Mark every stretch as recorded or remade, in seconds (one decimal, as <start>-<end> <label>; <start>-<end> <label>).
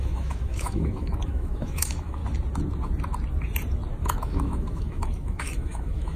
0.0-2.2 remade; 2.2-4.0 recorded; 4.0-6.2 remade